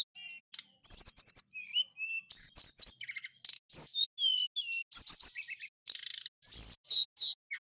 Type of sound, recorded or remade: recorded